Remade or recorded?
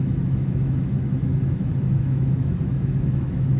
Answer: remade